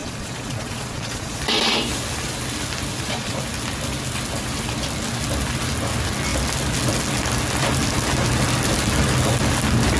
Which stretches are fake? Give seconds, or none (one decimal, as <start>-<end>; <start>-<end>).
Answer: 0.0-1.4; 2.9-3.4